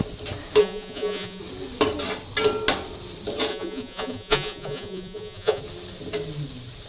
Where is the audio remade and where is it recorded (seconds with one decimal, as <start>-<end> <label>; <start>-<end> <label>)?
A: 0.0-0.6 recorded; 0.6-1.4 remade; 1.4-3.5 recorded; 3.5-5.6 remade; 5.6-6.9 recorded